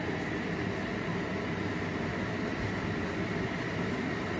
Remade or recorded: recorded